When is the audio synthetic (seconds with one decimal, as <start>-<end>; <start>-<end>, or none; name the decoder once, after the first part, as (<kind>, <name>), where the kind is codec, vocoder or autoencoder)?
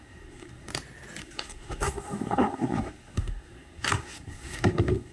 0.0-0.7 (codec, SNAC); 1.2-5.1